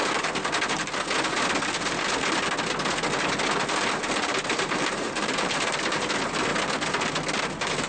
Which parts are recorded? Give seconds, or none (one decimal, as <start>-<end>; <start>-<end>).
0.0-4.0; 5.6-7.9